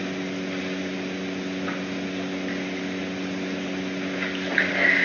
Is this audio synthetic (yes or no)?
no